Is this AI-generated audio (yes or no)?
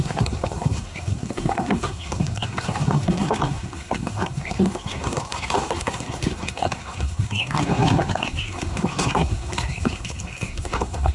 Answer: yes